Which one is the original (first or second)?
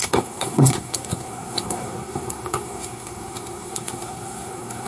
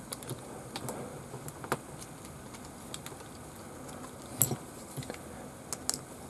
second